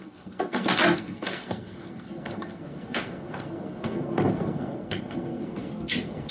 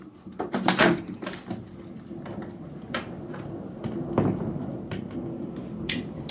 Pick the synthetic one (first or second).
first